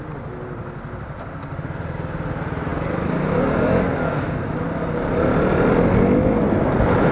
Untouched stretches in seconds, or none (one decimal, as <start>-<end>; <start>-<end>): 0.0-7.1